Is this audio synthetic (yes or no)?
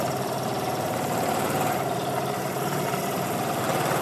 yes